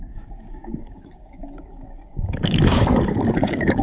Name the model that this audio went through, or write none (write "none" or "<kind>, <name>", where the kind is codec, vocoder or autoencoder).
codec, DAC